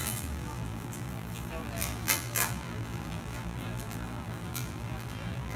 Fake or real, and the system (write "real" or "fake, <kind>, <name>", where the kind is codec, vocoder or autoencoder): fake, vocoder, BigVGAN v2